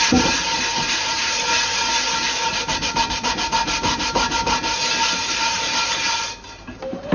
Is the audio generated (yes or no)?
yes